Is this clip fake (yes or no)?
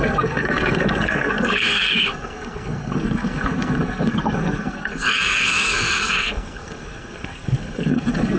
yes